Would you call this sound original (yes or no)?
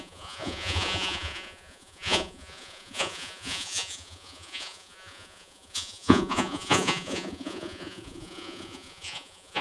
no